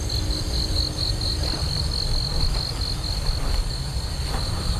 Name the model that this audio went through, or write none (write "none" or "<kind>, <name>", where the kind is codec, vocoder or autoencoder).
none